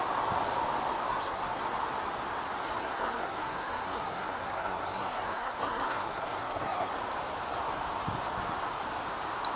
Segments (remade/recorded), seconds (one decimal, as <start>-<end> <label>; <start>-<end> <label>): 0.0-1.1 recorded; 1.1-1.6 remade; 1.6-2.8 recorded; 2.8-6.9 remade; 6.9-9.6 recorded